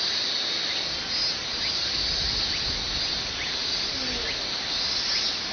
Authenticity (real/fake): real